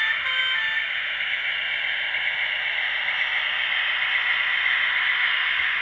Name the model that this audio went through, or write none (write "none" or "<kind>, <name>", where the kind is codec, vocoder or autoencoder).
none